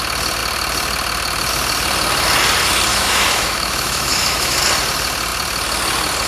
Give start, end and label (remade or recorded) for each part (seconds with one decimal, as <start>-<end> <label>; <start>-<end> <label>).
0.0-2.9 recorded; 2.9-4.6 remade; 4.6-6.3 recorded